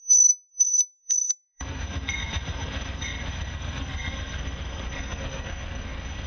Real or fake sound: fake